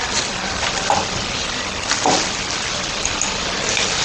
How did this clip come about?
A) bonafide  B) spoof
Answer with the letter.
A